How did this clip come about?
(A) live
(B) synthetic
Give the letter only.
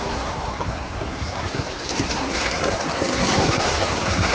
B